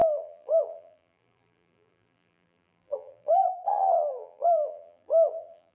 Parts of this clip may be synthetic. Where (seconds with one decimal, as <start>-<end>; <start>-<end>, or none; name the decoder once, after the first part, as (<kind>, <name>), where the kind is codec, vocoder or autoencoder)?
0.0-5.7 (vocoder, BigVGAN v2)